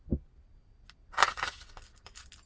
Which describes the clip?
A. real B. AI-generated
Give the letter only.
A